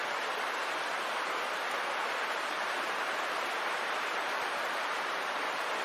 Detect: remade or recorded remade